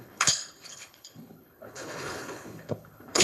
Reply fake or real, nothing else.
fake